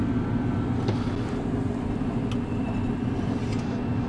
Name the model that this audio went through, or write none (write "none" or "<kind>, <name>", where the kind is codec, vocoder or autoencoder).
none